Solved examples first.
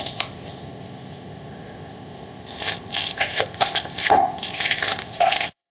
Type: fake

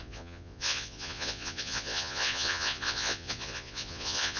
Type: fake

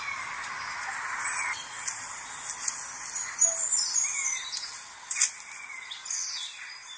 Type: real